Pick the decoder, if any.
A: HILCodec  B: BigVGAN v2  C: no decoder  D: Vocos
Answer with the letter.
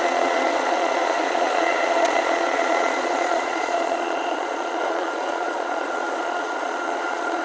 D